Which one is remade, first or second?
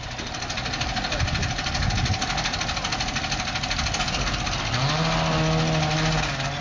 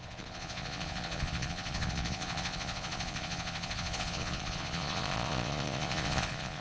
second